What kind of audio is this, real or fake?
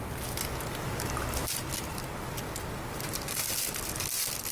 real